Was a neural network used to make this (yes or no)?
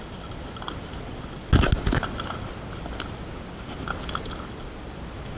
no